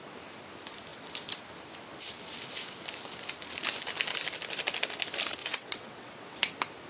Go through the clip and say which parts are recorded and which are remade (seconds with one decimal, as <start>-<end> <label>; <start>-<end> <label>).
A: 0.0-5.4 recorded; 5.4-6.5 remade; 6.5-6.9 recorded